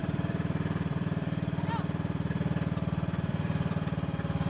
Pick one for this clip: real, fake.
fake